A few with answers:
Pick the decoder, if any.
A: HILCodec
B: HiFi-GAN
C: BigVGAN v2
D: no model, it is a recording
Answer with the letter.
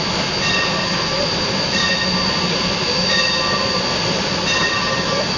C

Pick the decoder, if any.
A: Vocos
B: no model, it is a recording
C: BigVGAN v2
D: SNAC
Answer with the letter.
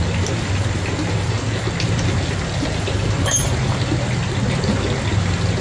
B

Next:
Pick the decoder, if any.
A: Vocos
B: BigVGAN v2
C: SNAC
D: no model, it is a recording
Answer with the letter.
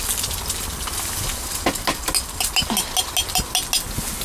D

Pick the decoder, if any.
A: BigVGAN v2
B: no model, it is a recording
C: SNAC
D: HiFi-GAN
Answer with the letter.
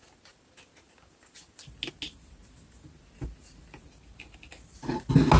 B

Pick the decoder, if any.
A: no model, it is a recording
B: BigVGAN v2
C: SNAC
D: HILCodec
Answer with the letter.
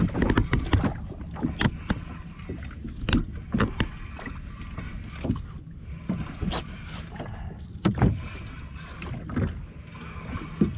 A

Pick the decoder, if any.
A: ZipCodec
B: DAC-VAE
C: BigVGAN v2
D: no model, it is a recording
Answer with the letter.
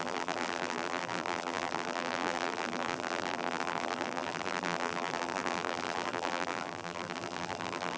C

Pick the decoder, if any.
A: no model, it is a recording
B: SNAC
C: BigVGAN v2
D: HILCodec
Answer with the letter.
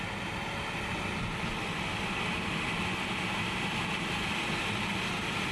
A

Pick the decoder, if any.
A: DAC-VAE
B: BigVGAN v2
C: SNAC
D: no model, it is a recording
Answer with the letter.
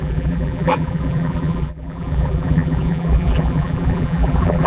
B